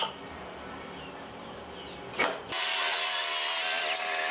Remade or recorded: recorded